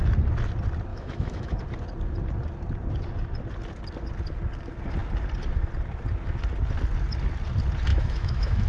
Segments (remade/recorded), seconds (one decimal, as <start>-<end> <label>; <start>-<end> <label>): 0.0-0.9 recorded; 0.9-1.6 remade; 1.6-7.9 recorded; 7.9-8.7 remade